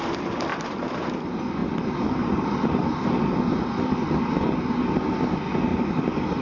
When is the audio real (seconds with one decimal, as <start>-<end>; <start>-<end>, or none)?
0.0-0.5; 1.1-1.6; 3.6-5.7